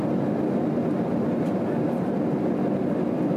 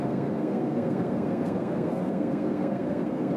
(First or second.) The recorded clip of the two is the first